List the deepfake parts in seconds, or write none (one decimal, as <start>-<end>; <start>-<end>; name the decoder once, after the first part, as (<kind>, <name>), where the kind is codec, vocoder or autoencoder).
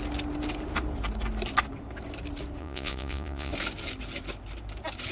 2.6-3.5 (vocoder, Vocos)